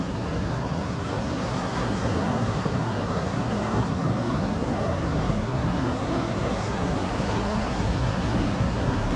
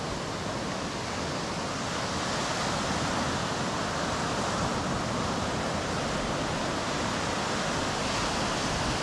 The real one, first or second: second